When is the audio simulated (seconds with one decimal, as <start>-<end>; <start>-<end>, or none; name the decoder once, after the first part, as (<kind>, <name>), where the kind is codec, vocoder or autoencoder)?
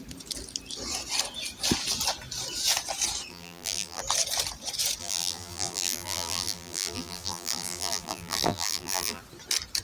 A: 3.3-4.0 (vocoder, BigVGAN v2); 5.0-9.2